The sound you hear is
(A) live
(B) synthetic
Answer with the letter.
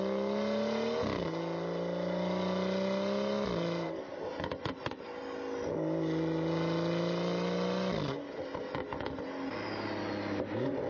A